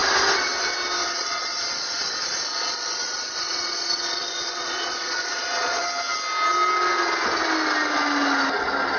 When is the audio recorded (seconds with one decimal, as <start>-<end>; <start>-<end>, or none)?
0.0-1.0; 5.8-9.0

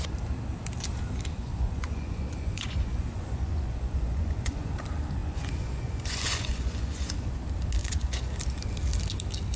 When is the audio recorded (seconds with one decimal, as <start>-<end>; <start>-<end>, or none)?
0.0-1.4; 4.8-5.2; 7.3-7.8; 8.3-9.6

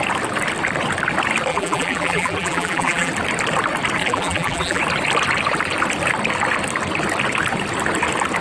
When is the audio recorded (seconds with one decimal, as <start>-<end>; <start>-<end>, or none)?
0.0-1.5; 3.1-4.0; 4.8-8.4

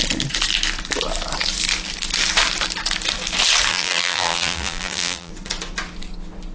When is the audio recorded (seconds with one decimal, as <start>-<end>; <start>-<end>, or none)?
0.0-3.7; 5.3-6.5

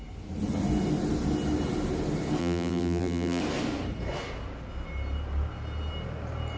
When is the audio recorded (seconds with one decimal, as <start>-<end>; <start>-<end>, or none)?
0.0-2.4; 3.4-6.6